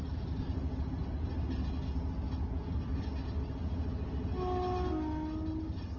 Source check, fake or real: real